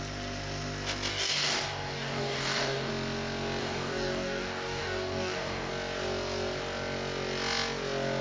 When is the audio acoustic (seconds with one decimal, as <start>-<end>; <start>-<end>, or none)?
0.0-1.1; 2.9-3.6; 5.7-8.2